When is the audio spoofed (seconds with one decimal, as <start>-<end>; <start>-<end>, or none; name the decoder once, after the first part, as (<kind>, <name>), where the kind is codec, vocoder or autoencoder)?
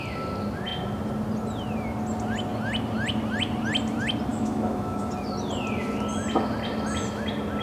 4.3-5.1 (autoencoder, DAC-VAE)